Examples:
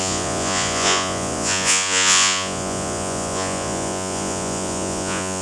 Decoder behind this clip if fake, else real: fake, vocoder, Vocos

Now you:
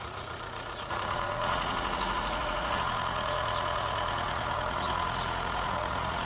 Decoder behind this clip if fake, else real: fake, vocoder, Vocos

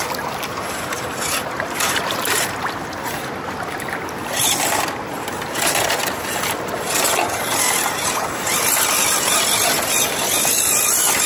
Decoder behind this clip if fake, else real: real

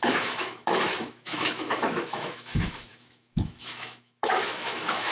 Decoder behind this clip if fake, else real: fake, autoencoder, DAC-VAE